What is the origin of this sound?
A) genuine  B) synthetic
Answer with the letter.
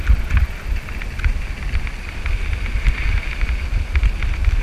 A